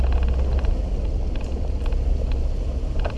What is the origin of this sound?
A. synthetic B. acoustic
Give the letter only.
B